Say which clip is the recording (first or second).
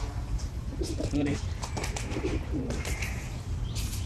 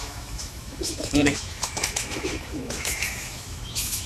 first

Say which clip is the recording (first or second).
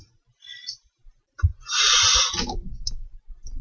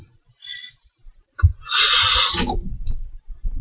first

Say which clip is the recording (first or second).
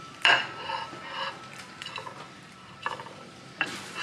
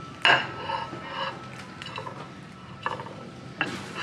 second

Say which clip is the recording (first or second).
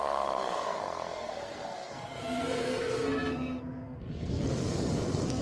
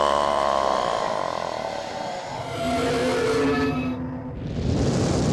second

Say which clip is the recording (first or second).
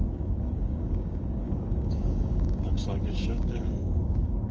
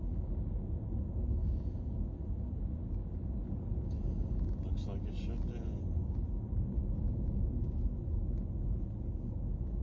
second